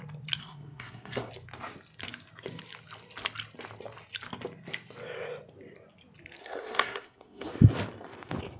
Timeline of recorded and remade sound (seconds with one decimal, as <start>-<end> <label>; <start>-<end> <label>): 0.0-0.4 recorded; 0.4-1.3 remade; 1.3-6.4 recorded; 6.4-7.5 remade; 7.5-8.6 recorded